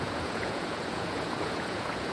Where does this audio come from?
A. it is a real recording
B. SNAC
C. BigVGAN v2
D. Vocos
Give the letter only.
D